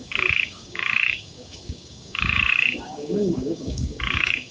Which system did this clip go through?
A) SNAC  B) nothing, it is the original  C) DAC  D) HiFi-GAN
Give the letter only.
C